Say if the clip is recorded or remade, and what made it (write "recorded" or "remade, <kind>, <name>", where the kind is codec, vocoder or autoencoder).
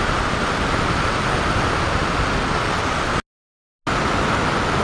recorded